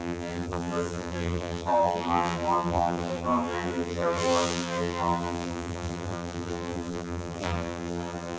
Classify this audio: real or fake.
fake